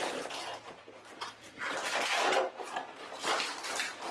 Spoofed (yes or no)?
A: no